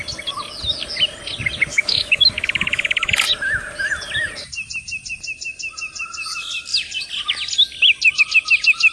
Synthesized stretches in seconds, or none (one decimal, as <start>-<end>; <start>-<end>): 1.7-3.1